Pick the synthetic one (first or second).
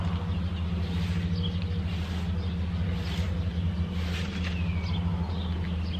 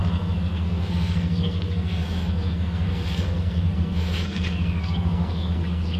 second